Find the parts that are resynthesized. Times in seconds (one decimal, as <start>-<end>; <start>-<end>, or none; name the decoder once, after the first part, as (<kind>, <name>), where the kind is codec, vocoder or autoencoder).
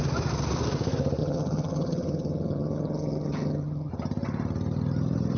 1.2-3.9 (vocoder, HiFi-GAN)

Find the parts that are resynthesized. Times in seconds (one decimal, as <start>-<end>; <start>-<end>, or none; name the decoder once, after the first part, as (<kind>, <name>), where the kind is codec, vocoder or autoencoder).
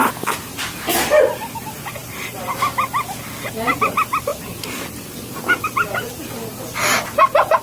none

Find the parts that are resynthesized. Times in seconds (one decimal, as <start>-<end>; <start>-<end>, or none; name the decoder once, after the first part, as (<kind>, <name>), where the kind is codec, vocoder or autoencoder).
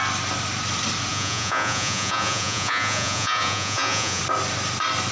1.1-4.2 (vocoder, Vocos)